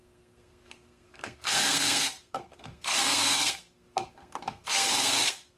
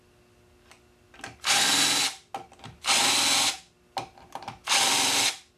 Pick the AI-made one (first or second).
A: first